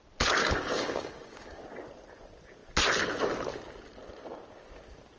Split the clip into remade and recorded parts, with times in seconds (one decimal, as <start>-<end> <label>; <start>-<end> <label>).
0.0-0.4 recorded; 0.4-1.6 remade; 1.6-5.2 recorded